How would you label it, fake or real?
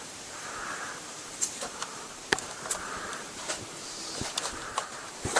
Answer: fake